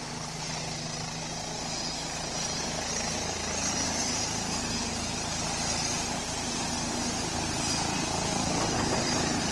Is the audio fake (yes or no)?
no